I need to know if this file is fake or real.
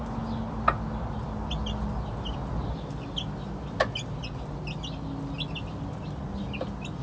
real